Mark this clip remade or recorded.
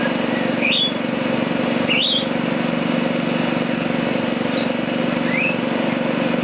recorded